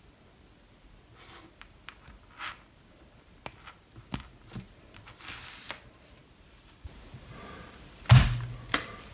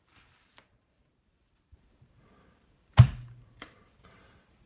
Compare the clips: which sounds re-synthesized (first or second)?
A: second